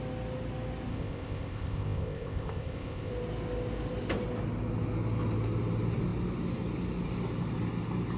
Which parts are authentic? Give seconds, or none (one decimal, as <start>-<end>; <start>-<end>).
0.0-0.9; 3.1-8.2